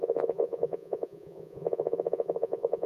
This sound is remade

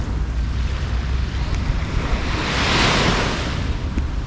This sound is recorded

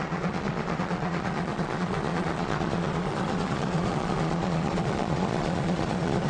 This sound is remade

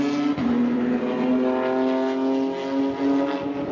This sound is recorded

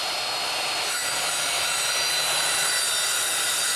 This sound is recorded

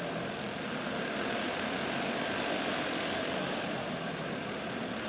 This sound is recorded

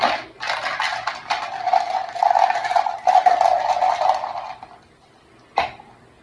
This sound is recorded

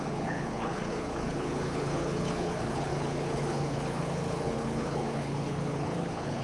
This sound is remade